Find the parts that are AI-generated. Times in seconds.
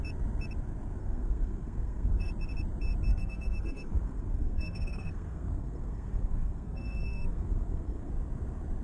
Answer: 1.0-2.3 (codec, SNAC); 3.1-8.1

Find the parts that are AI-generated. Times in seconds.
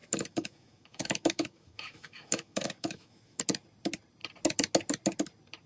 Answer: 0.0-3.4 (autoencoder, DAC-VAE)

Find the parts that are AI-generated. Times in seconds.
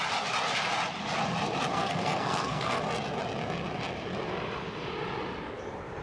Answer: 1.7-2.8 (codec, SNAC)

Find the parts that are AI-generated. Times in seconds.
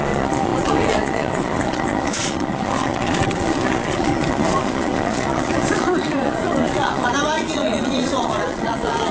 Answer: 0.0-9.1 (vocoder, Vocos)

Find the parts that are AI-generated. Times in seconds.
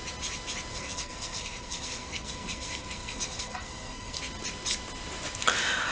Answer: 0.7-4.2 (codec, SNAC)